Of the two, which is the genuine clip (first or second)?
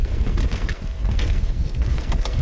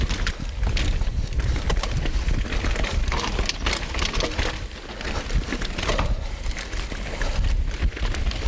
second